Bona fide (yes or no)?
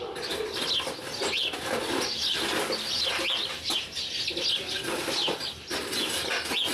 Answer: no